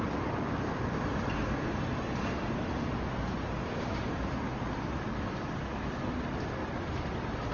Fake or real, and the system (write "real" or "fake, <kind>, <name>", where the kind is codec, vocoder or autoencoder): real